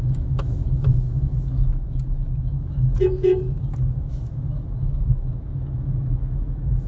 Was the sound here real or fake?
fake